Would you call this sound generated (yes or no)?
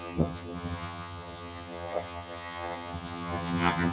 yes